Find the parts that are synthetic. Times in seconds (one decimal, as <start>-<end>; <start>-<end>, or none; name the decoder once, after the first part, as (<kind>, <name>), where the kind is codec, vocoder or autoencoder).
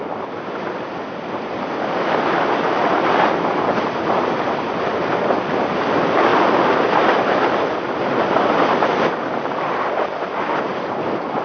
none